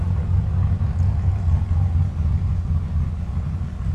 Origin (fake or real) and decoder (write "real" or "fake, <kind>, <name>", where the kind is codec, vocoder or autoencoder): real